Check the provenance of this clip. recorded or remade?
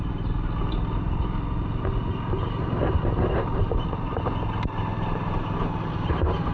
recorded